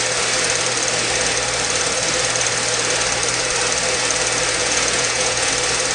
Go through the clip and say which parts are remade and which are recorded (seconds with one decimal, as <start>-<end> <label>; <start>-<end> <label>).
0.0-4.6 recorded; 4.6-5.5 remade; 5.5-5.9 recorded